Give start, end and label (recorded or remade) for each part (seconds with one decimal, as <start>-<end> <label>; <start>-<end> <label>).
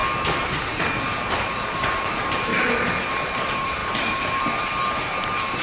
0.0-1.5 recorded; 1.5-2.5 remade; 2.5-3.1 recorded; 3.1-5.6 remade